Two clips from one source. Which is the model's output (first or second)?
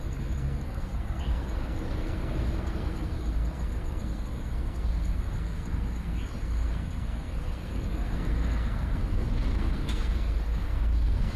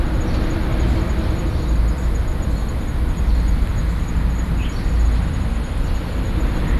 first